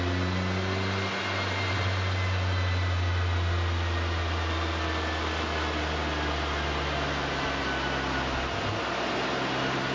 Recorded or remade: recorded